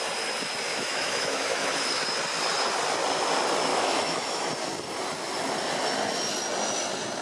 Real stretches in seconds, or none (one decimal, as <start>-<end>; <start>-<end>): 0.0-0.7; 1.7-3.7; 4.5-7.2